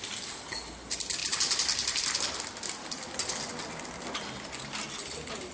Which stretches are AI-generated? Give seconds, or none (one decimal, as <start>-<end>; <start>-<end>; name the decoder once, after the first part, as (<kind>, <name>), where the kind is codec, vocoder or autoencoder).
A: none